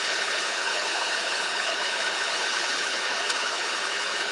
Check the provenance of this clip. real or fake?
fake